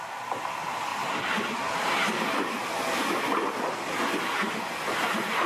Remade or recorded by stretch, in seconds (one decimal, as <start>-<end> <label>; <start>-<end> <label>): 0.0-5.5 recorded